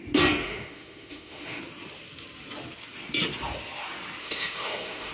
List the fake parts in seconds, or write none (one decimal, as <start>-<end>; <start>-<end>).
0.4-1.6; 4.2-5.1